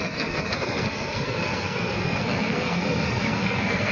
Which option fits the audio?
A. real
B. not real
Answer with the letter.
B